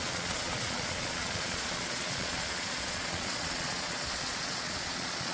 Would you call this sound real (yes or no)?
no